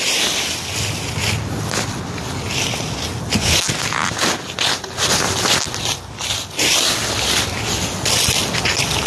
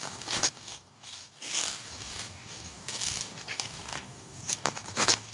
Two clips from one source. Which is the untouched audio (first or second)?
first